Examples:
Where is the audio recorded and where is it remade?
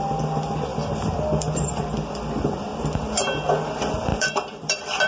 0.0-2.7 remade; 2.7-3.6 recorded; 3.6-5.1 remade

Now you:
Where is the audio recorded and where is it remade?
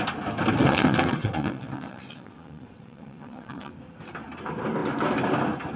0.0-0.6 recorded; 0.6-3.7 remade; 3.7-5.8 recorded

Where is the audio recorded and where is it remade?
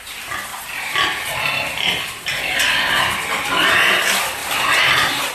0.0-5.3 recorded